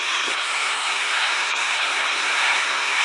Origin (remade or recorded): remade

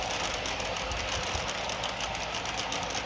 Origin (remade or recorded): recorded